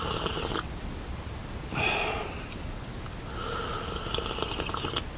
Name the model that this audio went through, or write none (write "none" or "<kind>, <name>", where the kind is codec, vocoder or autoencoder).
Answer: none